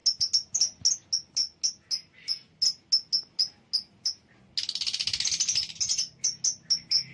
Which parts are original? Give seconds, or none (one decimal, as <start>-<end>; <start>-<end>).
0.0-7.1